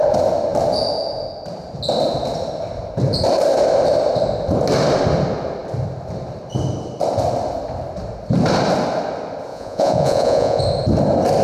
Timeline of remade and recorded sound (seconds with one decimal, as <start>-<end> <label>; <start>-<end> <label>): 0.0-9.5 recorded; 9.5-10.6 remade; 10.6-11.4 recorded